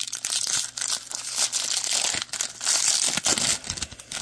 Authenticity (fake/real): real